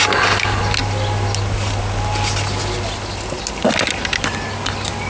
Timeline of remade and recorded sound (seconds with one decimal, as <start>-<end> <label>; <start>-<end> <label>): 0.0-5.1 recorded